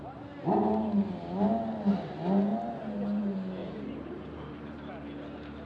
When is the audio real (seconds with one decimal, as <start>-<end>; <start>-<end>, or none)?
0.0-3.6; 4.9-5.7